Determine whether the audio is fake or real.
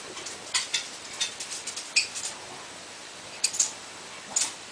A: real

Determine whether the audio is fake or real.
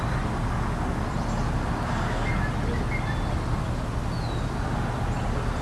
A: real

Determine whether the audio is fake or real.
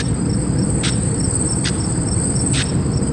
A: real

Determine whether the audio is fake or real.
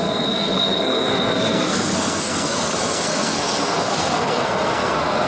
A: fake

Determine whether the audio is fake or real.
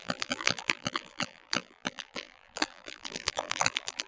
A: fake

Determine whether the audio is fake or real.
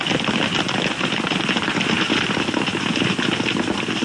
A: real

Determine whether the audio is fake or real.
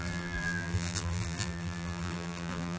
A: fake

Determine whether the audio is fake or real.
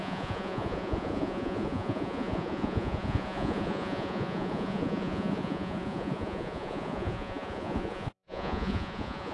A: fake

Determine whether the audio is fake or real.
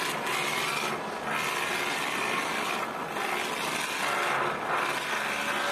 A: real